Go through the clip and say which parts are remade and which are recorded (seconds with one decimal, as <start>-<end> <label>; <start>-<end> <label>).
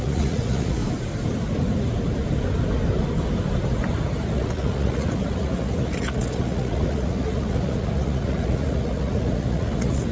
0.0-0.8 remade; 0.8-4.3 recorded; 4.3-10.1 remade